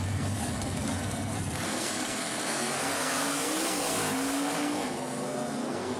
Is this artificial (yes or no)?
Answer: yes